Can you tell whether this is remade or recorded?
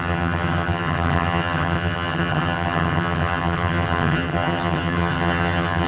remade